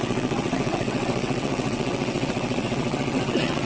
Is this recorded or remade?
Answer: remade